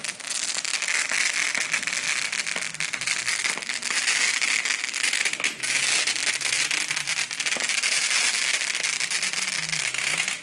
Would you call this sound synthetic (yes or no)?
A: no